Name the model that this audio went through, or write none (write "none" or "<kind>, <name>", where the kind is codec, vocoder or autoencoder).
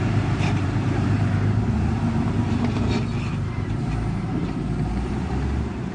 vocoder, BigVGAN v2